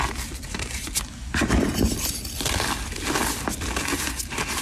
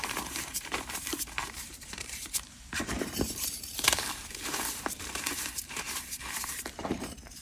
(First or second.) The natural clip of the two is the first